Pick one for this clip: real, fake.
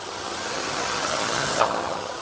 fake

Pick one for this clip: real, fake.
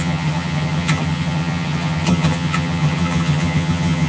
fake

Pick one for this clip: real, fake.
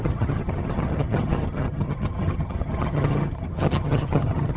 fake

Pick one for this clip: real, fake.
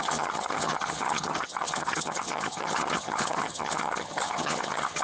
fake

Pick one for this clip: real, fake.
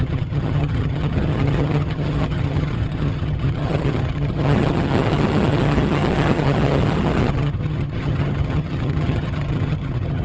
fake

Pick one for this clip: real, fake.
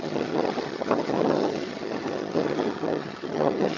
fake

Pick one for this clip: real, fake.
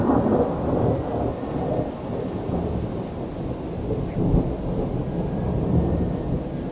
real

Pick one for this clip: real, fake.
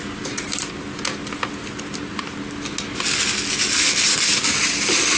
real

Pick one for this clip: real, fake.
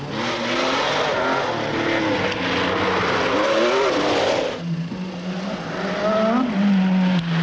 real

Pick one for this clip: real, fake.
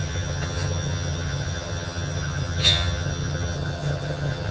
fake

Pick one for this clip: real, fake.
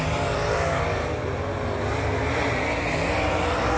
real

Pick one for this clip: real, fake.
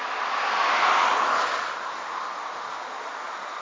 real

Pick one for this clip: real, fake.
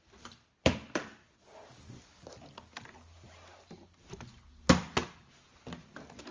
real